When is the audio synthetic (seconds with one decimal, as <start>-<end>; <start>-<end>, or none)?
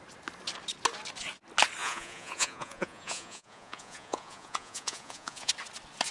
1.8-5.5